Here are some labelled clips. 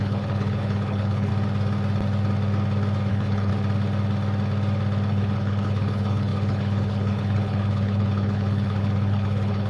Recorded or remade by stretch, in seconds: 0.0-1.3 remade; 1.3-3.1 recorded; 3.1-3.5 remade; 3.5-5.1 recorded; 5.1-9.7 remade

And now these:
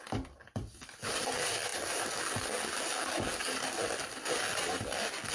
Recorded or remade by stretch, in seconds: 0.0-5.3 recorded

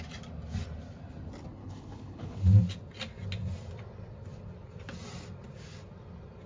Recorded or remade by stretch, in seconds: 0.0-1.6 recorded; 1.6-2.4 remade; 2.4-6.5 recorded

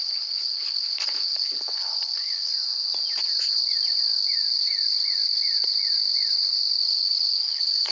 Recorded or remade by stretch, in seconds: 0.0-2.5 remade; 2.5-6.8 recorded; 6.8-7.9 remade

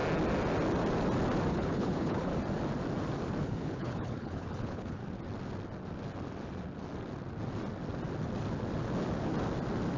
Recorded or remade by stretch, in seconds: 0.0-1.5 recorded; 1.5-2.3 remade; 2.3-3.4 recorded; 3.4-5.0 remade; 5.0-10.0 recorded

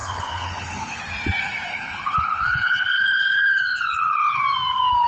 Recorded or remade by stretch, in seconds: 0.0-1.0 remade; 1.0-1.7 recorded; 1.7-4.4 remade; 4.4-5.1 recorded